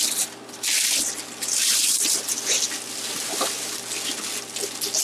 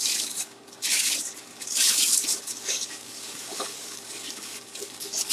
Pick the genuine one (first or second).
first